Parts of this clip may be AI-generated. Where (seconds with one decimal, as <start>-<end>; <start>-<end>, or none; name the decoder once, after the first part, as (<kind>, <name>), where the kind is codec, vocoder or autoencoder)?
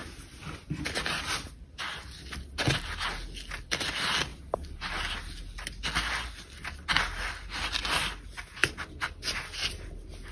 none